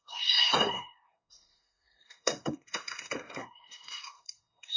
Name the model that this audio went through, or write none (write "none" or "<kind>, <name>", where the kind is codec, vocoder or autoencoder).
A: codec, SNAC